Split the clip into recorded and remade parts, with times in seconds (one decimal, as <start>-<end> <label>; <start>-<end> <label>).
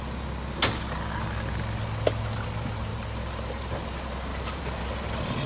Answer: 0.0-2.9 recorded; 2.9-3.8 remade; 3.8-4.3 recorded; 4.3-4.9 remade; 4.9-5.5 recorded